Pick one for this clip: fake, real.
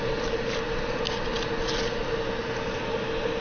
real